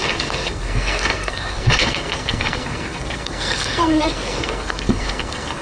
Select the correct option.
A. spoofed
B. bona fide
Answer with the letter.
A